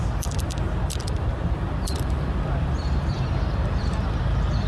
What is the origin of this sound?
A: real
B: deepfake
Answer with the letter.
B